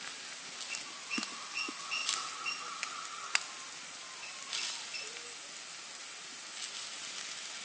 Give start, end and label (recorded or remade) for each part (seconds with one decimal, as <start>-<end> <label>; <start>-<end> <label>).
0.0-7.6 recorded